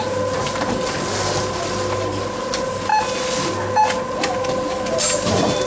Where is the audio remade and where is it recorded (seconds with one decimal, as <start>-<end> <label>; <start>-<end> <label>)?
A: 0.0-5.7 recorded